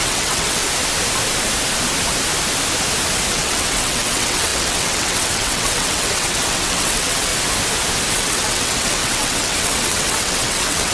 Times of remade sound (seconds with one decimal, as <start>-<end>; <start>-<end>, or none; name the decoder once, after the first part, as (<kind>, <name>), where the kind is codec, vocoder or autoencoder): 0.0-0.6 (vocoder, WaveNeXt); 3.3-7.3; 8.1-10.9

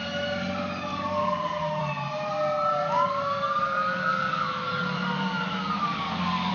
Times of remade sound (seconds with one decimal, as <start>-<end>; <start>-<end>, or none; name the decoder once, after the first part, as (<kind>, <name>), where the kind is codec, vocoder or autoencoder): 0.9-1.8 (codec, DAC); 2.7-6.5

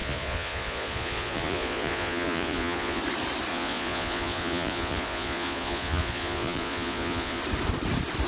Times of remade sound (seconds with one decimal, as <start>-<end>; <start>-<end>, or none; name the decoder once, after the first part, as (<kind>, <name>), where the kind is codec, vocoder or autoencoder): 0.0-3.0 (vocoder, Vocos); 3.5-7.4

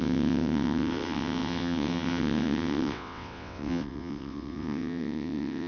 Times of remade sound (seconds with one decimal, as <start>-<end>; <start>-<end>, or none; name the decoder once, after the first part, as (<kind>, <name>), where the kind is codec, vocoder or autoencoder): 0.0-5.7 (vocoder, WaveNeXt)